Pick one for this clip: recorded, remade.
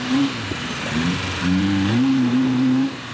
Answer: remade